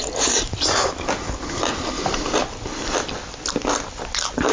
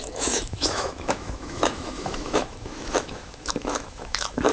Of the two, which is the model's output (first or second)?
second